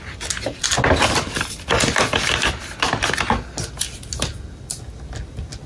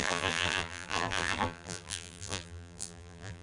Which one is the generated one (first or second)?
second